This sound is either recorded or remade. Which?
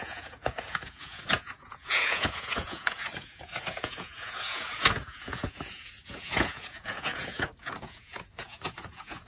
remade